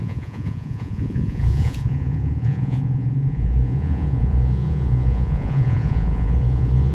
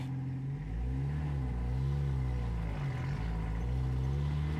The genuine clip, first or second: second